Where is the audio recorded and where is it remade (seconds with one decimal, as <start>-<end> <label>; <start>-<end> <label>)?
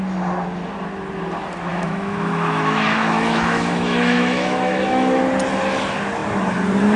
0.0-1.7 recorded; 1.7-5.2 remade; 5.2-7.0 recorded